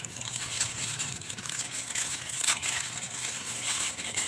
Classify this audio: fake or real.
fake